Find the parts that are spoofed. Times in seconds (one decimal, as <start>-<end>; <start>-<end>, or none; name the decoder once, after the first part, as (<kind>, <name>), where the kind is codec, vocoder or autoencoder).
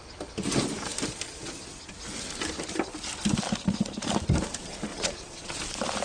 4.9-5.6 (vocoder, Vocos)